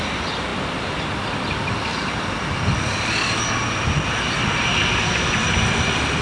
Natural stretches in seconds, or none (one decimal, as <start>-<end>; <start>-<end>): 0.0-6.2